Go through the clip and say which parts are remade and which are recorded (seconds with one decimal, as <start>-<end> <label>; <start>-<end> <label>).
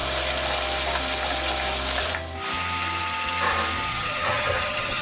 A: 0.0-3.9 recorded; 3.9-5.0 remade